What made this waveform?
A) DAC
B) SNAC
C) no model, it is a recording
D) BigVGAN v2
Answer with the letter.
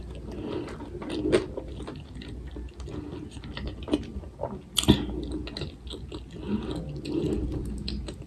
C